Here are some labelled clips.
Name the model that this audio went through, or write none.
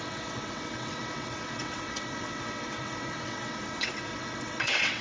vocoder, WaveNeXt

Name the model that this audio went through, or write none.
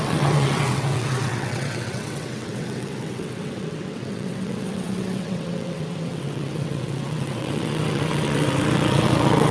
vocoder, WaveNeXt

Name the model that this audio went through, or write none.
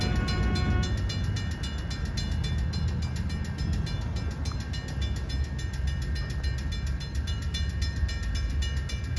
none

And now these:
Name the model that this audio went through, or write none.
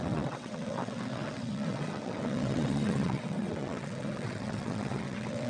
vocoder, WaveNeXt